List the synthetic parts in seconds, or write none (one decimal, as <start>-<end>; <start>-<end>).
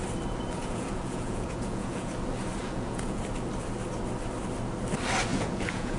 0.6-2.1; 2.6-3.2; 5.3-6.0